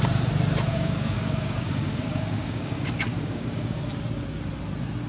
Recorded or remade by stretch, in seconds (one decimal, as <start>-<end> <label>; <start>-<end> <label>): 0.0-0.7 recorded; 0.7-3.8 remade; 3.8-5.1 recorded